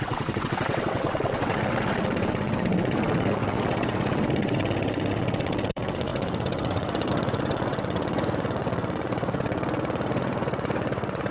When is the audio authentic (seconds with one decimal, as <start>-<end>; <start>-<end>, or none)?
none